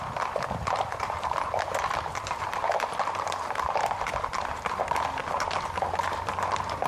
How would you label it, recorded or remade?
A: remade